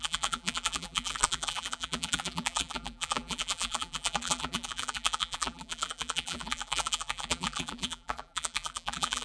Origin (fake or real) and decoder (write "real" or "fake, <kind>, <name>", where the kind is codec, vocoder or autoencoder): fake, vocoder, BigVGAN v2